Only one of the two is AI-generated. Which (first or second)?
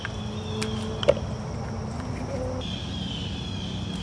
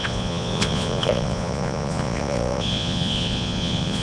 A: second